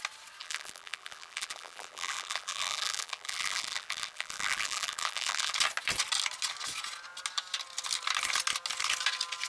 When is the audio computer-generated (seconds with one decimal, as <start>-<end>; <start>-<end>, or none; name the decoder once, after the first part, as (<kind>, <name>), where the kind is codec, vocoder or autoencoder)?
0.4-5.5 (vocoder, BigVGAN v2)

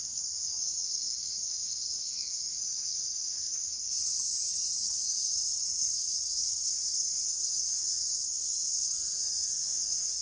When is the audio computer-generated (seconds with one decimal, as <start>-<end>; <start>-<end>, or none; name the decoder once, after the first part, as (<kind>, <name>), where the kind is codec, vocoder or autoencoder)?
0.0-3.9 (codec, SNAC); 4.8-10.2

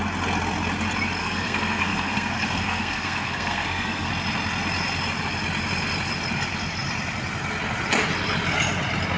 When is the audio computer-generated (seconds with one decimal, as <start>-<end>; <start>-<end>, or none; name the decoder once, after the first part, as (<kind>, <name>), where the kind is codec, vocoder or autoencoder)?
1.2-4.1 (codec, SNAC)

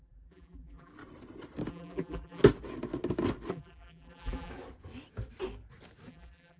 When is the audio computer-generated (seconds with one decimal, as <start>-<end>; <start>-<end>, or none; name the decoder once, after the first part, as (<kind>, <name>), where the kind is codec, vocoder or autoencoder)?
0.0-0.9 (vocoder, BigVGAN v2); 1.7-2.4; 3.5-4.5; 6.1-6.6

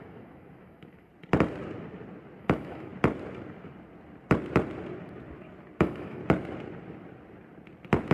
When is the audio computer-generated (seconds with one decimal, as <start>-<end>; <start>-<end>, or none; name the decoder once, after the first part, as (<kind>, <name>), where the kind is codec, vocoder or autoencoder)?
0.0-1.1 (autoencoder, DAC-VAE); 2.4-2.9; 5.8-6.2